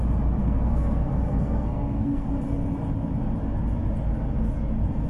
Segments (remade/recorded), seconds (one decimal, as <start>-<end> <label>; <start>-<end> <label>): 0.0-0.4 recorded; 0.4-2.3 remade; 2.3-5.1 recorded